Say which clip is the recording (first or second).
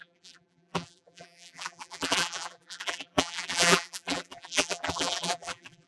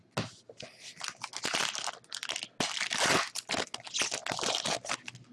second